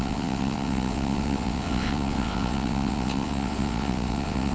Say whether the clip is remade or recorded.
remade